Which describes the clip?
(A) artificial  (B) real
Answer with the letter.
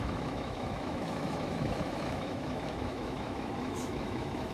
A